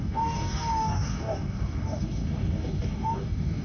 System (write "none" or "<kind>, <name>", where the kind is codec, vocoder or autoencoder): codec, DAC